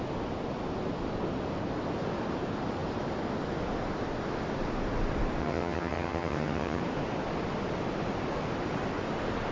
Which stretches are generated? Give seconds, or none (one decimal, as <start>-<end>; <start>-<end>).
5.4-6.8